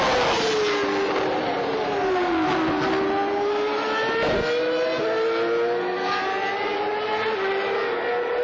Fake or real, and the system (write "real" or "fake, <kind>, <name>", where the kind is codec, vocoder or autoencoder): real